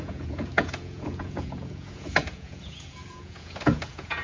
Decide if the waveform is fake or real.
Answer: fake